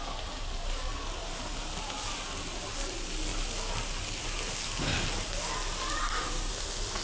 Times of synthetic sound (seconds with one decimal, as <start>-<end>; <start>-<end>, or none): 6.0-6.5